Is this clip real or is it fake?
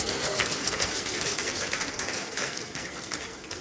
fake